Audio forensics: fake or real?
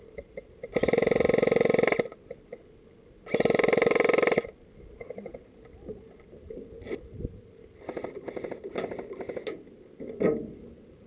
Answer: real